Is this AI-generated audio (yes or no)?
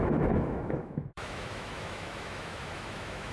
yes